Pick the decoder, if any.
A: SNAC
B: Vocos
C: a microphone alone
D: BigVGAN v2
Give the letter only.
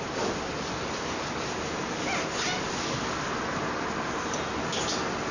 C